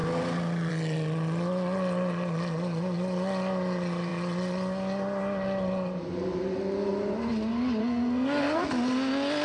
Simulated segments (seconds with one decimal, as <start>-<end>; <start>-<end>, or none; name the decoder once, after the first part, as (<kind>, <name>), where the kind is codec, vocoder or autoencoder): 7.8-8.6 (codec, SNAC)

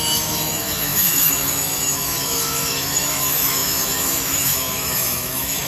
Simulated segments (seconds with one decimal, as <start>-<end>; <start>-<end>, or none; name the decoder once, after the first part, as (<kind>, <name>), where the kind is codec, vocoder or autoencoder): 0.0-5.7 (autoencoder, DAC-VAE)

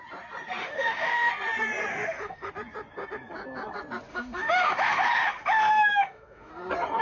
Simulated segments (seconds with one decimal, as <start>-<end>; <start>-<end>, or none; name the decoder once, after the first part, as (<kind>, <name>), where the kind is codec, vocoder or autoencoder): 0.6-1.3 (autoencoder, DAC-VAE); 1.9-2.5; 4.1-6.5

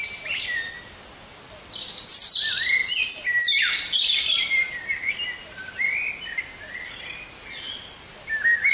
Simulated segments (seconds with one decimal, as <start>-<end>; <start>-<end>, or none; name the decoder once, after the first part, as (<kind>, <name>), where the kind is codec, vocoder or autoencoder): none

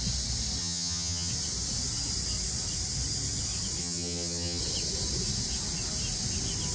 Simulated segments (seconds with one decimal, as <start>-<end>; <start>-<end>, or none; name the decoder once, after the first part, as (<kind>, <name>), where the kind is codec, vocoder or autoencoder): 0.6-1.3 (vocoder, HiFi-GAN); 3.8-4.6